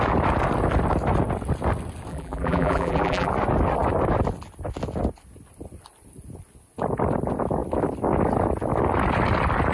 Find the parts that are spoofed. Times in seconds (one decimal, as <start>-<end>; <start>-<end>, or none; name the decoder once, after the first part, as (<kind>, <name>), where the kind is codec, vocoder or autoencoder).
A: 2.1-3.3 (vocoder, BigVGAN v2)